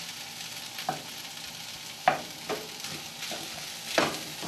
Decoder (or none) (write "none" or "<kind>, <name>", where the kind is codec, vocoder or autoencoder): none